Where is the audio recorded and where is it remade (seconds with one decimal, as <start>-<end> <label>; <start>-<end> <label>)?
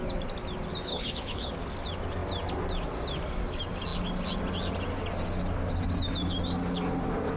0.0-0.9 recorded; 0.9-1.5 remade; 1.5-7.4 recorded